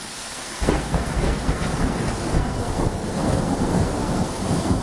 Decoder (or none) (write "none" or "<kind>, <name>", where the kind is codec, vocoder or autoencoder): codec, SNAC